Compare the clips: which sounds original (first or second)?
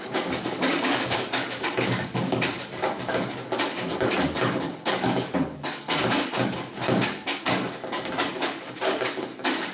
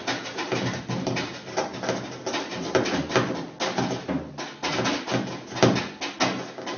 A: second